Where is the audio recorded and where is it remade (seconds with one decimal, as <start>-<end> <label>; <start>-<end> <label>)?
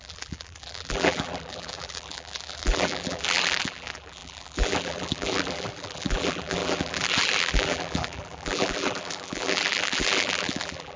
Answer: 0.0-11.0 remade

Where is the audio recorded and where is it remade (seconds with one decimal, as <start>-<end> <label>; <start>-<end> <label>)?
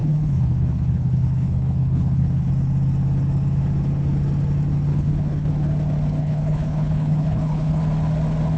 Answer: 0.0-2.5 remade; 2.5-4.9 recorded; 4.9-5.5 remade; 5.5-6.2 recorded; 6.2-7.8 remade; 7.8-8.6 recorded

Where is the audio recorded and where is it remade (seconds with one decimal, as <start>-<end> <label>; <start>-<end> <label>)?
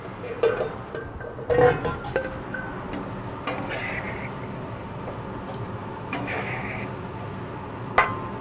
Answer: 0.0-5.8 recorded; 5.8-6.9 remade; 6.9-8.4 recorded